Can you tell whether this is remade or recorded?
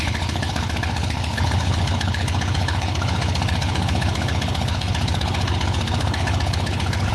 remade